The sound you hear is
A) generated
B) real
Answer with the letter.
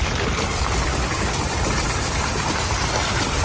A